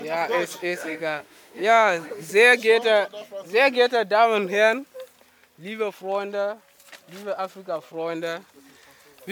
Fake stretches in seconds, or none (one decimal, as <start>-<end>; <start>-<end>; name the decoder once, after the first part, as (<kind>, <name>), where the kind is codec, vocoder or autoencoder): 0.6-2.3 (autoencoder, DAC-VAE)